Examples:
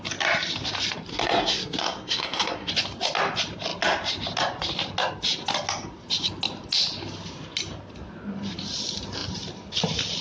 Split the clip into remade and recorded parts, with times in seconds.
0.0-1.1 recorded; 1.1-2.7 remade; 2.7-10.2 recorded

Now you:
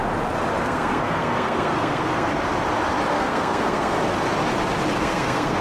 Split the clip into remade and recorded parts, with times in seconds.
0.0-0.6 recorded; 0.6-2.3 remade; 2.3-3.1 recorded; 3.1-3.9 remade; 3.9-5.0 recorded; 5.0-5.6 remade

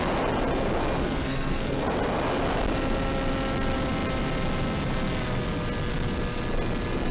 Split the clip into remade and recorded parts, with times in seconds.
0.0-1.0 recorded; 1.0-1.8 remade; 1.8-7.1 recorded

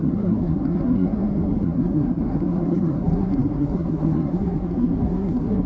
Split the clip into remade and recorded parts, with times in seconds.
0.0-5.7 remade